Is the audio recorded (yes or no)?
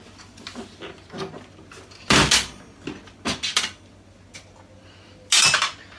yes